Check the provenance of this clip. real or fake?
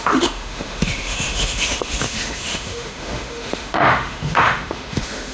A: fake